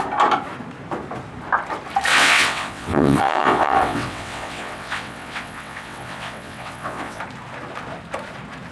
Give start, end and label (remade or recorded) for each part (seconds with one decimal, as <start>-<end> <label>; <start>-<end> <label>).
0.0-2.1 recorded; 2.1-7.2 remade; 7.2-8.7 recorded